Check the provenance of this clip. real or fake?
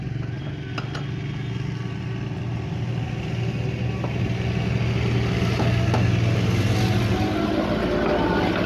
real